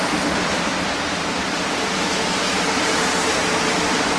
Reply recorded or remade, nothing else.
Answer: recorded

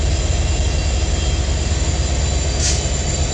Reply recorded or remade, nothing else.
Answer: recorded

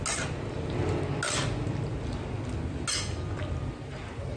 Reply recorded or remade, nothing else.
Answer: recorded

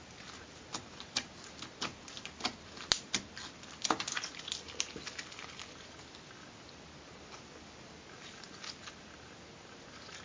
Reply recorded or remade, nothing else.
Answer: recorded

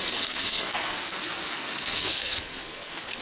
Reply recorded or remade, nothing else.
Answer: remade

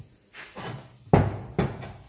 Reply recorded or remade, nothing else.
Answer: recorded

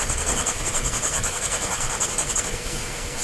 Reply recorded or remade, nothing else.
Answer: remade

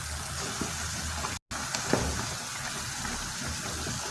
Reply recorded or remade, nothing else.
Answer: recorded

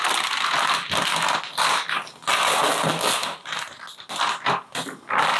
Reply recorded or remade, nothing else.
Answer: recorded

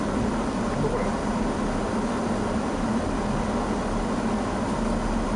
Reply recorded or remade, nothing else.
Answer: recorded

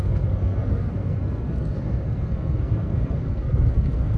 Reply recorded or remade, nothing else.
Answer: remade